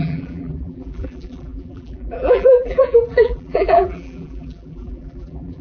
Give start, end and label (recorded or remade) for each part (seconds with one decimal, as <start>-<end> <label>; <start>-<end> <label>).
0.0-5.6 remade